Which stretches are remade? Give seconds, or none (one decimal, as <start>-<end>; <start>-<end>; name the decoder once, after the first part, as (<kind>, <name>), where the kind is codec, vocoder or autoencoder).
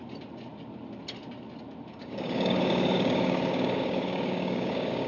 1.9-5.1 (codec, DAC)